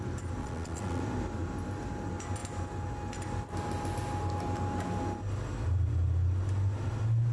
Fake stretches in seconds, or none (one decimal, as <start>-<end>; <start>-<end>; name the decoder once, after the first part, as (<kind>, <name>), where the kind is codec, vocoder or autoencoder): 0.4-1.0 (vocoder, Vocos)

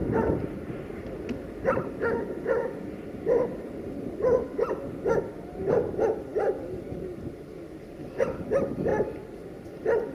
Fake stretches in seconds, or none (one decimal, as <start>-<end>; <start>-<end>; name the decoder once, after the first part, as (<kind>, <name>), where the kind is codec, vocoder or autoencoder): 0.0-0.9 (vocoder, BigVGAN v2)

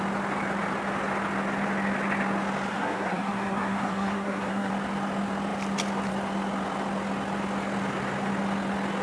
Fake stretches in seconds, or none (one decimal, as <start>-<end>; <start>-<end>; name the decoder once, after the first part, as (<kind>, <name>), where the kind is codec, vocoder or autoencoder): 2.7-4.7 (codec, SNAC)

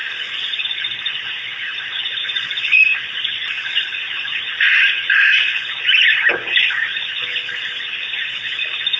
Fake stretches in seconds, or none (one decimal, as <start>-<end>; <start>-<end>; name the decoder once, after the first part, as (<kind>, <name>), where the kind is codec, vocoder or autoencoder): none

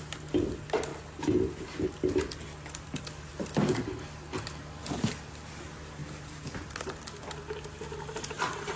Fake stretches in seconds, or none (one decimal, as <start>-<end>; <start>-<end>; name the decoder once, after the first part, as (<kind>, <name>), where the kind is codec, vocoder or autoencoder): 6.0-7.0 (vocoder, BigVGAN v2)

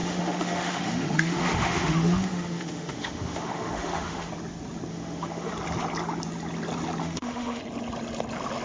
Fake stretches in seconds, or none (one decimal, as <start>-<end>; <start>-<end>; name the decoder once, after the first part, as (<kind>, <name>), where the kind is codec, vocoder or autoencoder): 0.0-4.3 (autoencoder, DAC-VAE); 4.9-5.5; 7.0-7.6

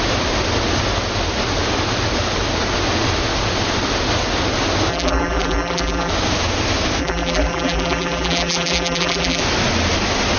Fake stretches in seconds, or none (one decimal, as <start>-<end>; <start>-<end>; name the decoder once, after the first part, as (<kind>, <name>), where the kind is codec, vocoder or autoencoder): 4.9-6.1 (vocoder, BigVGAN v2); 7.0-9.4